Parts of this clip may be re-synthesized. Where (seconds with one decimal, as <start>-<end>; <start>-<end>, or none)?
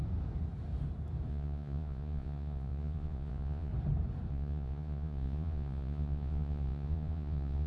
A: 1.3-3.7; 4.3-7.7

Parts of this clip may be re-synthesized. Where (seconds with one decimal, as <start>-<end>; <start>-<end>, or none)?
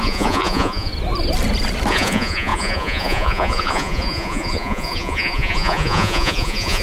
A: 0.0-0.9; 1.9-6.8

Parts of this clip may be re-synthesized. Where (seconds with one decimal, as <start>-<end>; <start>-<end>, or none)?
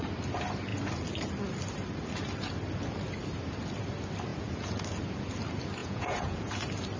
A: 4.3-4.8; 5.8-6.5